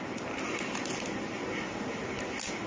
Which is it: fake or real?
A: real